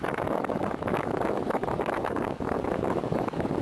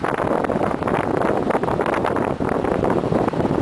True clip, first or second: second